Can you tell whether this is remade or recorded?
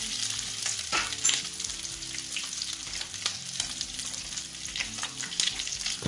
recorded